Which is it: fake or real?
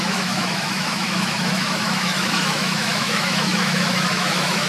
fake